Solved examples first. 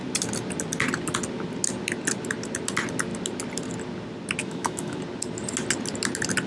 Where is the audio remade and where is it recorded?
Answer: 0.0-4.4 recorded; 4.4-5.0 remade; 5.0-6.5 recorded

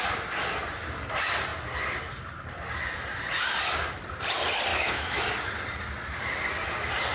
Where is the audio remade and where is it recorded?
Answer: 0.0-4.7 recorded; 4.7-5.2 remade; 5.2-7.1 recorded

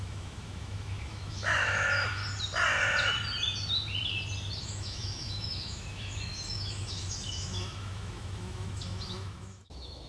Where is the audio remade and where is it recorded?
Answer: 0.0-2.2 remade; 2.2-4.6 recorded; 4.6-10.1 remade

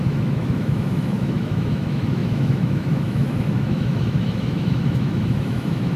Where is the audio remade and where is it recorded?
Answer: 0.0-6.0 remade